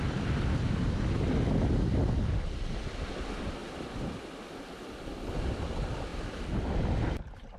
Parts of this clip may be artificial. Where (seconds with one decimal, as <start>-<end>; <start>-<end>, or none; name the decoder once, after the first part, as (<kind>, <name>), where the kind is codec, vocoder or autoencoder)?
3.6-4.2 (vocoder, BigVGAN v2); 6.1-7.0